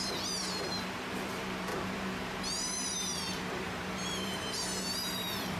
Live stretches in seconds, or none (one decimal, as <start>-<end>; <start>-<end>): none